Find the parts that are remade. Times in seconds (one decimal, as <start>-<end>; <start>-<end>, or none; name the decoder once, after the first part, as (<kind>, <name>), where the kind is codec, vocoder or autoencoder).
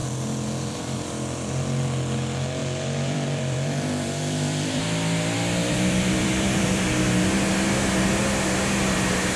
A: 0.0-1.5 (vocoder, BigVGAN v2); 2.6-7.0